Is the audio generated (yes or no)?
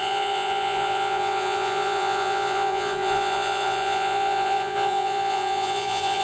yes